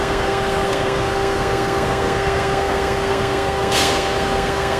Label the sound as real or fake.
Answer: fake